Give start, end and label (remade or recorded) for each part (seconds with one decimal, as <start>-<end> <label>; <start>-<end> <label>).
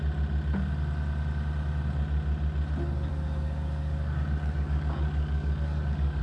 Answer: 0.0-3.1 recorded; 3.1-6.2 remade